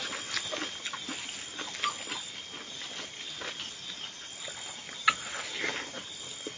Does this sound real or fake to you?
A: real